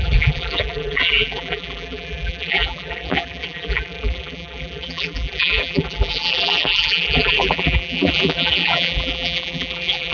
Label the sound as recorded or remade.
remade